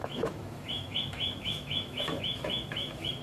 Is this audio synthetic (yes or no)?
yes